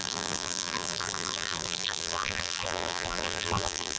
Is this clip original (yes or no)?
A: no